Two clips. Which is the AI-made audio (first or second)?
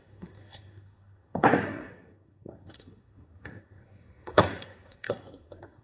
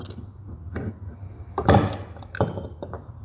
first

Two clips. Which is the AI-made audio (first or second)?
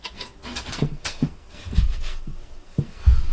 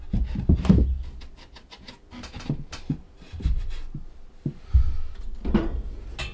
first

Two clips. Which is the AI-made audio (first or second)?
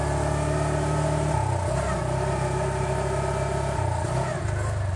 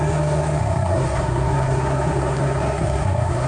second